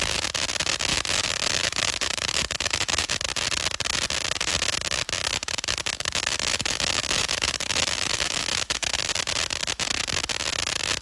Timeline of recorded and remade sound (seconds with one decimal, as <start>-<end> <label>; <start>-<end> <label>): 0.0-0.9 recorded; 0.9-3.1 remade; 3.1-5.2 recorded; 5.2-9.1 remade; 9.1-11.0 recorded